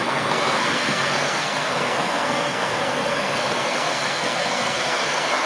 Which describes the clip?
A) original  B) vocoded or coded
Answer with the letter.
B